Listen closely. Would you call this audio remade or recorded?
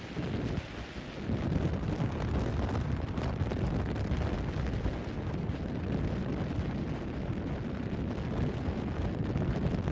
recorded